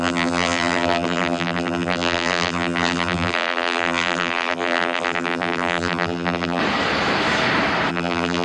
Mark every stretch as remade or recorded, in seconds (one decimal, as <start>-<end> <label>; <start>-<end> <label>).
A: 0.0-6.6 remade; 6.6-7.9 recorded; 7.9-8.4 remade